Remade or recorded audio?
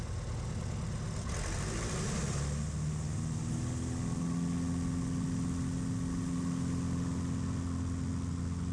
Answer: recorded